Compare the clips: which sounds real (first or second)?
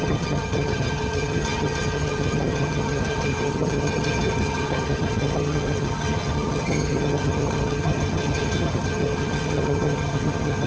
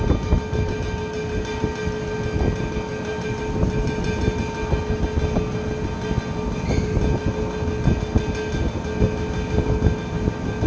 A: second